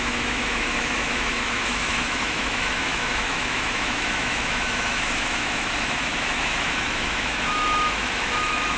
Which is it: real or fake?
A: fake